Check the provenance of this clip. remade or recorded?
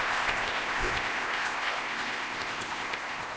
remade